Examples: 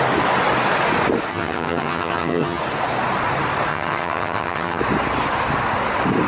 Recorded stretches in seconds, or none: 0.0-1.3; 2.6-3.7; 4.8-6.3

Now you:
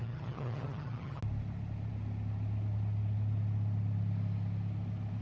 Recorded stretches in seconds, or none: 1.2-5.2

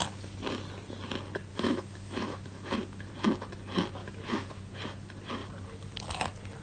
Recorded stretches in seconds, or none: 0.0-1.5; 3.1-4.0; 4.6-6.6

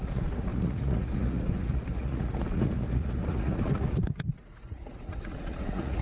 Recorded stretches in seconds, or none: none

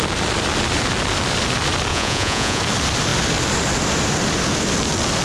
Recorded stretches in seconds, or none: 0.0-1.9; 2.6-5.2

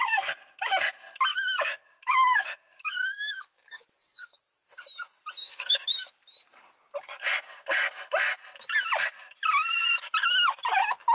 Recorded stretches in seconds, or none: 0.0-1.3; 4.8-5.4; 5.9-11.1

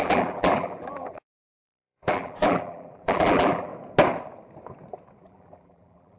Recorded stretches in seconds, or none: 3.7-5.2

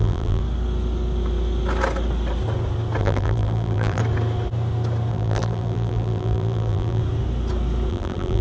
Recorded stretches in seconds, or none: 0.4-3.0; 4.0-5.1; 7.0-7.9